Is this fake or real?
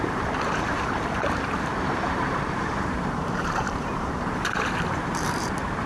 fake